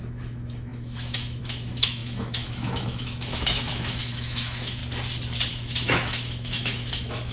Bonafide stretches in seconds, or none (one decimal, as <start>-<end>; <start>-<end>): 4.8-5.5